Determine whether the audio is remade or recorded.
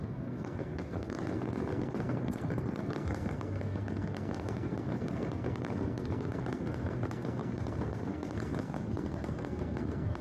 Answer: remade